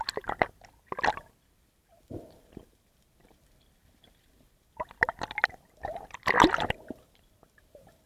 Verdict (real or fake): fake